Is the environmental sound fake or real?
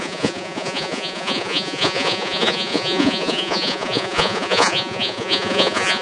fake